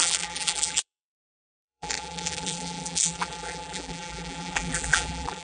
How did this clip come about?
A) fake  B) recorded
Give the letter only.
A